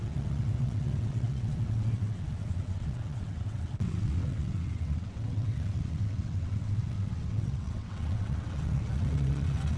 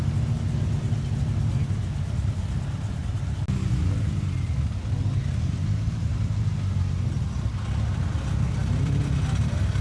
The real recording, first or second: second